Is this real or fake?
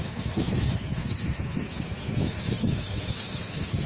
fake